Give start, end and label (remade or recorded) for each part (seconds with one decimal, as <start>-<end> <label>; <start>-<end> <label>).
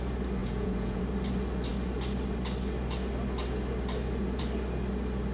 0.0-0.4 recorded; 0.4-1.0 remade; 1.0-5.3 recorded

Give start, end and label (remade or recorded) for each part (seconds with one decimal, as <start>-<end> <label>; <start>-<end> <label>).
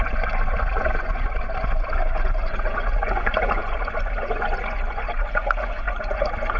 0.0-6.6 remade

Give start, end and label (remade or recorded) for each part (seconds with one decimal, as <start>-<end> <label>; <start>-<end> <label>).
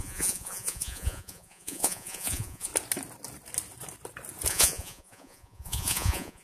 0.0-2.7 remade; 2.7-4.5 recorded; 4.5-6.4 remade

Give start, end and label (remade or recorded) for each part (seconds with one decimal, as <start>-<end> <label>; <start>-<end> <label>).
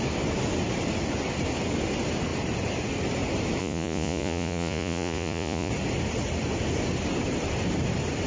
0.0-3.6 recorded; 3.6-5.7 remade; 5.7-8.3 recorded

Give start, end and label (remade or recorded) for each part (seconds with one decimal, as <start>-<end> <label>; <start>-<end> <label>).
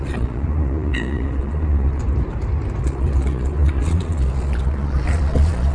0.0-2.0 remade; 2.0-2.8 recorded; 2.8-5.7 remade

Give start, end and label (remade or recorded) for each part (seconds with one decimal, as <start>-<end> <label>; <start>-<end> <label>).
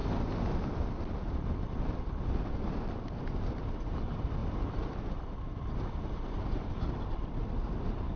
0.0-8.2 recorded